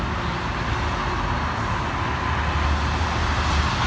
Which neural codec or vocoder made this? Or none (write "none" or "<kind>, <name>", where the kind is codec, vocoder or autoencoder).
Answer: none